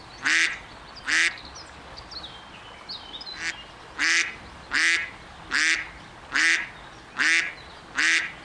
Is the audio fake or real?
real